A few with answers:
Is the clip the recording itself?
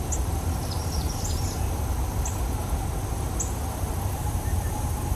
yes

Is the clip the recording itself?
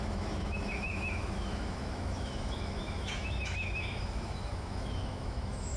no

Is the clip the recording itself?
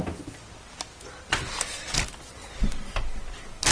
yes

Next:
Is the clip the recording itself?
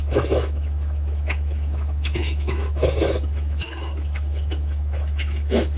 no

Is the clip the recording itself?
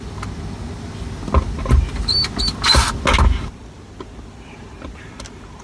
yes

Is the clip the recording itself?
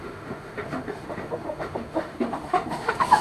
no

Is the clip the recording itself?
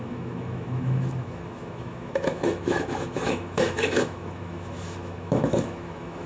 no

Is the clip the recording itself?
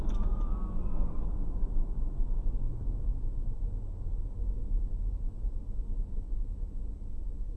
yes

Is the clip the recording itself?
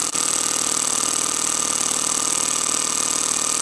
yes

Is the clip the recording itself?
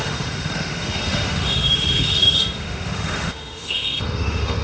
no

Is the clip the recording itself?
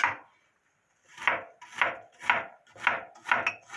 yes